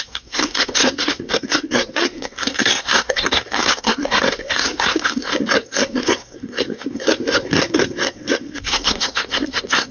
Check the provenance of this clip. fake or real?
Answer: fake